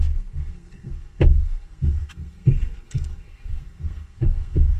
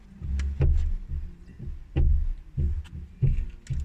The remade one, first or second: first